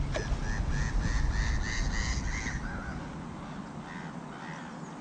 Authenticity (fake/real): real